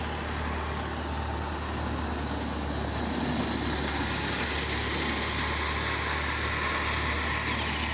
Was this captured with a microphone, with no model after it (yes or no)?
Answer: yes